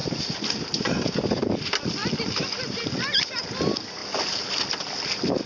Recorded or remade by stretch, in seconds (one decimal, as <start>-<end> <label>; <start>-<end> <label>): 0.0-5.5 recorded